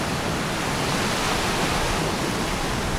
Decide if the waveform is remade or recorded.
recorded